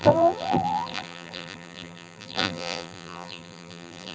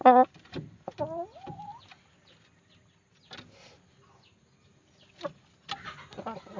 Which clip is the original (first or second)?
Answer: second